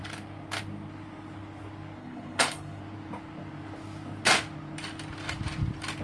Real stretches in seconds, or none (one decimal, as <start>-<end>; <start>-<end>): 0.0-2.0; 2.8-6.0